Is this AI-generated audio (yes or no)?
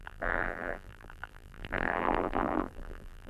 yes